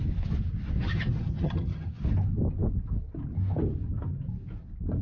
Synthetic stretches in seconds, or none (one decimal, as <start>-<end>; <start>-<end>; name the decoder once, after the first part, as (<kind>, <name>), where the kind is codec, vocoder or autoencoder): 0.9-2.0 (vocoder, HiFi-GAN)